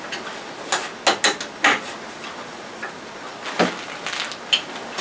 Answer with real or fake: real